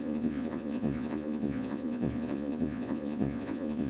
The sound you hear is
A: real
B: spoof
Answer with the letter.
B